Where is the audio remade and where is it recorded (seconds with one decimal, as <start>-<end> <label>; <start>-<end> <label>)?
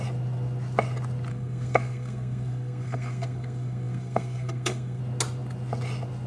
0.0-1.3 recorded; 1.3-5.0 remade; 5.0-6.3 recorded